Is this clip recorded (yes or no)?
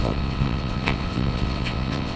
no